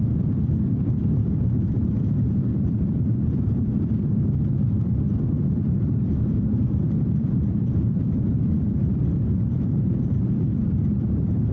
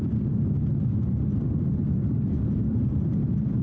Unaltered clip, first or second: second